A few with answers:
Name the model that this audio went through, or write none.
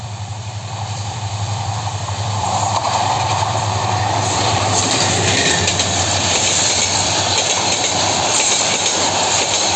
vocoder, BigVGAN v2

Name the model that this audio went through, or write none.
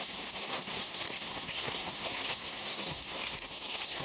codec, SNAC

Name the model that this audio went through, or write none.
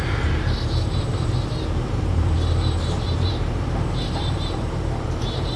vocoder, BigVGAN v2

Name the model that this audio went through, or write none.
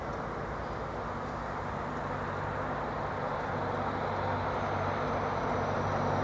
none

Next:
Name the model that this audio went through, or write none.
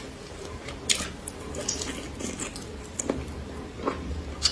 none